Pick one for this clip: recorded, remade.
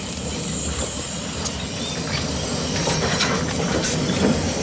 recorded